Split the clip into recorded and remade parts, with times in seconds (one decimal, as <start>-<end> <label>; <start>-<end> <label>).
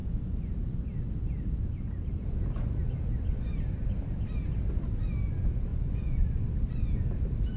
0.0-0.5 remade; 0.5-5.7 recorded; 5.7-6.4 remade; 6.4-7.6 recorded